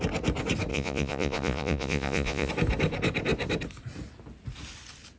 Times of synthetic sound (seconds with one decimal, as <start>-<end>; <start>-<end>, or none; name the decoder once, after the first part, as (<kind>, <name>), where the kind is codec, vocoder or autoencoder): 0.7-2.5 (vocoder, Vocos)